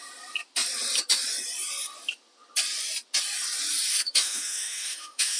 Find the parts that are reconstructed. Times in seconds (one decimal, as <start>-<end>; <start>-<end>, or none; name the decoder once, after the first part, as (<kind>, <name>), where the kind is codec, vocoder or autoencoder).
3.9-5.4 (autoencoder, DAC-VAE)